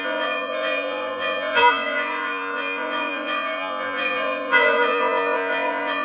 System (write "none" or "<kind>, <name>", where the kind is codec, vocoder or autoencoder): vocoder, Vocos